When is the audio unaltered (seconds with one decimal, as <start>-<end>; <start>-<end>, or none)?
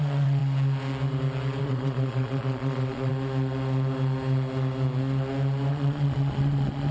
0.4-1.6; 3.1-5.7